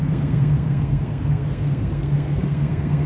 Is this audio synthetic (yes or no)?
yes